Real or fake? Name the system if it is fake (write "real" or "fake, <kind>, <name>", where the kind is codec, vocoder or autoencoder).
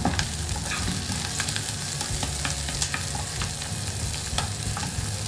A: real